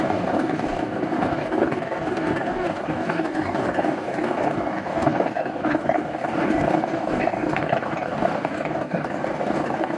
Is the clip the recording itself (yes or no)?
no